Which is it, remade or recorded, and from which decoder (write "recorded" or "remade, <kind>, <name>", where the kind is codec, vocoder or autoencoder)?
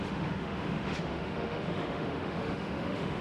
remade, autoencoder, DAC-VAE